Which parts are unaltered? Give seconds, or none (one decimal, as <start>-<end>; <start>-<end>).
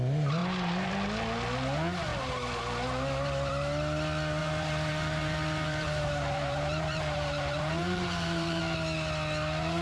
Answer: 0.0-0.4; 0.9-4.4; 8.6-9.8